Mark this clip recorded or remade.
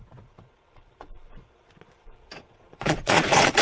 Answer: remade